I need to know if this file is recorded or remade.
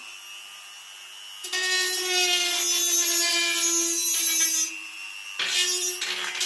recorded